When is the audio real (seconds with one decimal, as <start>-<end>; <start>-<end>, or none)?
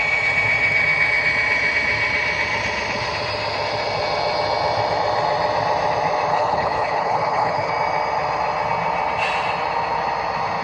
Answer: 0.0-6.3; 7.7-10.6